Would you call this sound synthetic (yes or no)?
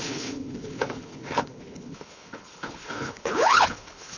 yes